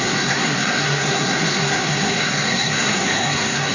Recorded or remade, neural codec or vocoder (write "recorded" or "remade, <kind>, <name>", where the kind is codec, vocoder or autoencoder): remade, codec, SNAC